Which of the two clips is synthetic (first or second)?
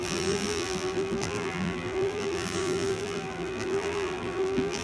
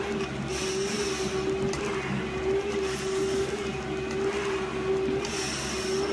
first